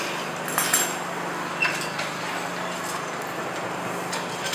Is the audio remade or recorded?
recorded